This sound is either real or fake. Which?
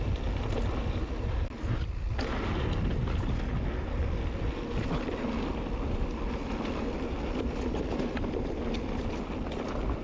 real